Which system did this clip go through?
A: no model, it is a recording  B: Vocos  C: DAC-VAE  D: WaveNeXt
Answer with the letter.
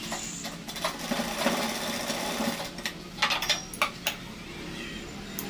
A